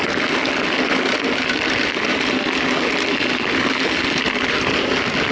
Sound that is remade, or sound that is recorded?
recorded